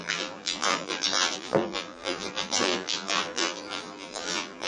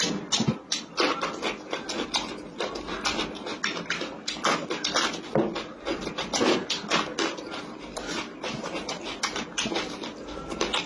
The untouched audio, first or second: second